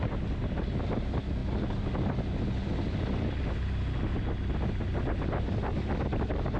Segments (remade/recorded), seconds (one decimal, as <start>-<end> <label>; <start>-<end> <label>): 0.0-6.6 recorded